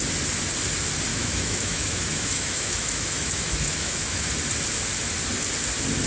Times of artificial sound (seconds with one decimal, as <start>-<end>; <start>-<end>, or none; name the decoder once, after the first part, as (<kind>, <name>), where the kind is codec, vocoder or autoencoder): 1.1-4.3 (autoencoder, DAC-VAE)